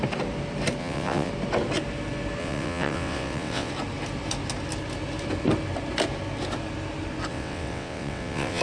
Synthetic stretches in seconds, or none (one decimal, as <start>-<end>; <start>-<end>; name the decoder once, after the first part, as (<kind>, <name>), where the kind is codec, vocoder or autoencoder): 0.8-1.3 (vocoder, WaveNeXt); 2.4-3.7; 7.3-8.6